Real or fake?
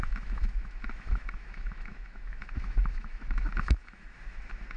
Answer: fake